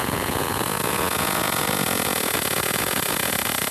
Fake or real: fake